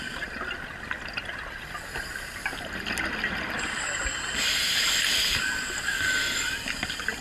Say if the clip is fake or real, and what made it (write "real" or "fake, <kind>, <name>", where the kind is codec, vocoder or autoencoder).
real